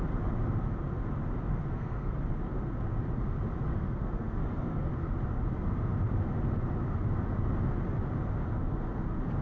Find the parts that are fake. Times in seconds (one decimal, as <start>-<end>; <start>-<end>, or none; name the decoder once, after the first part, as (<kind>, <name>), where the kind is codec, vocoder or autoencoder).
1.5-2.2 (codec, SNAC); 3.7-4.9